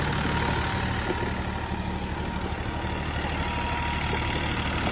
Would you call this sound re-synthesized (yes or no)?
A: no